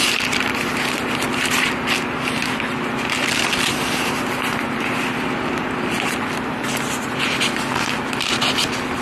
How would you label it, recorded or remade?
recorded